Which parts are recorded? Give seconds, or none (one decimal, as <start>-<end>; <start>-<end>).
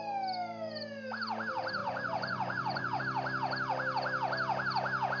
0.0-1.8; 3.0-5.2